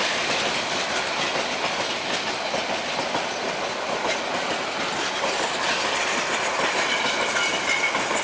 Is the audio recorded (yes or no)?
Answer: yes